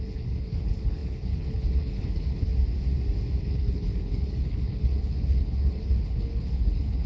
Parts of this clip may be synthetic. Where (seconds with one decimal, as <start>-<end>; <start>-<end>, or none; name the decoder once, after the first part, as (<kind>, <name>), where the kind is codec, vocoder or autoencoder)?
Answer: 0.0-2.5 (codec, HILCodec); 3.4-7.1